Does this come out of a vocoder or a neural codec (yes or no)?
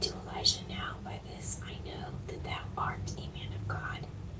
no